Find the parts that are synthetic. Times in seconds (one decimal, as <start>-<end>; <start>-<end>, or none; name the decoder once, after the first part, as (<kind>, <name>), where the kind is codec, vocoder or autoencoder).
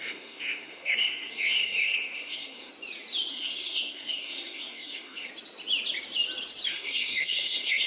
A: 0.0-2.7 (codec, SNAC); 3.3-5.3; 6.7-7.9